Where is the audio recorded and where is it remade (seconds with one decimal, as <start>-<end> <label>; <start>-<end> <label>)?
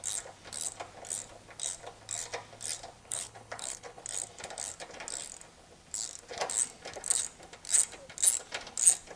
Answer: 0.0-3.0 recorded; 3.0-4.0 remade; 4.0-9.2 recorded